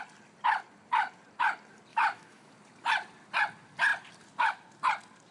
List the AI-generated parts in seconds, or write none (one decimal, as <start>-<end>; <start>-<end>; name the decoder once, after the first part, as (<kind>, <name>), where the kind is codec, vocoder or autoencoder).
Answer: 1.9-2.5 (autoencoder, DAC-VAE)